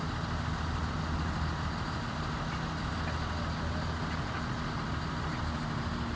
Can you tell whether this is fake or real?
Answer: real